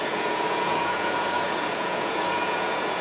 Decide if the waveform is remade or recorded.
remade